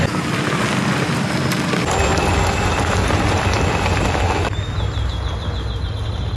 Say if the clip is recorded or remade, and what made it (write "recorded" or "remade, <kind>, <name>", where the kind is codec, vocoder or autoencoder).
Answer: recorded